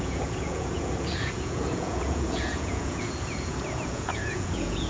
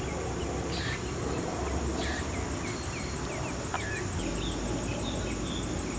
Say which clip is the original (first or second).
second